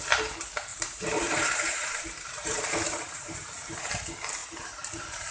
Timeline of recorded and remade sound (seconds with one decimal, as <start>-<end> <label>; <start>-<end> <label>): 0.0-0.7 recorded; 0.7-3.9 remade; 3.9-4.4 recorded; 4.4-5.3 remade